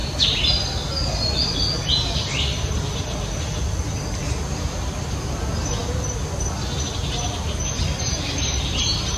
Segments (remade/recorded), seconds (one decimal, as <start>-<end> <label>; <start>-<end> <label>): 0.0-9.2 recorded